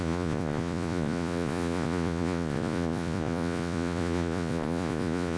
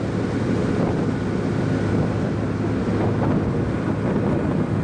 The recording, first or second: second